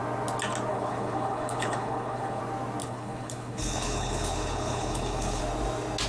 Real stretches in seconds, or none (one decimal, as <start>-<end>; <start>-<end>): 0.0-0.7; 2.4-2.8; 5.4-6.1